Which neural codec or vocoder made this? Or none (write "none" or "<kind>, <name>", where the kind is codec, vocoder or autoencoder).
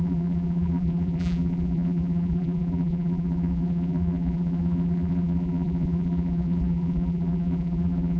vocoder, BigVGAN v2